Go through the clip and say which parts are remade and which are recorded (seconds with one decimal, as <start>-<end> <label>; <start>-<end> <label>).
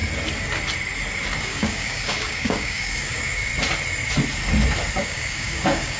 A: 0.0-1.4 recorded; 1.4-3.5 remade; 3.5-5.0 recorded; 5.0-6.0 remade